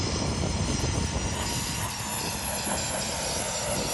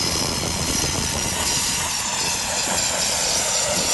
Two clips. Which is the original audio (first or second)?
first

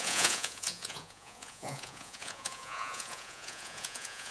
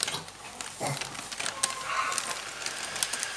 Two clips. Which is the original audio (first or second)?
second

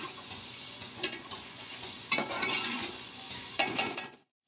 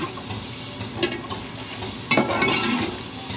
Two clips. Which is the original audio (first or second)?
second